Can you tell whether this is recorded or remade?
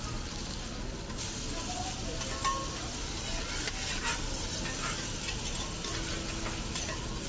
recorded